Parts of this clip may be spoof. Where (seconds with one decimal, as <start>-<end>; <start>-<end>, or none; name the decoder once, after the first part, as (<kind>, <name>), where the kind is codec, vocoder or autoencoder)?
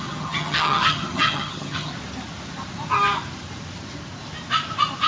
0.0-1.9 (vocoder, HiFi-GAN)